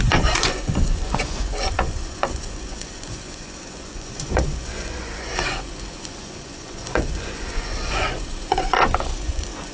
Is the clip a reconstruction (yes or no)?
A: yes